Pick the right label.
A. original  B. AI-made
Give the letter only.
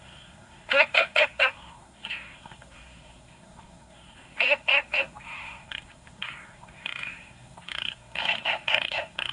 B